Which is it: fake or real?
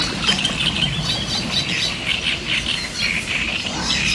real